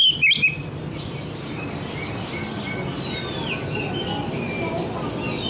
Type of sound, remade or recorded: recorded